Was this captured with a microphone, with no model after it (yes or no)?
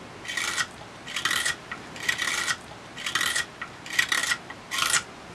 yes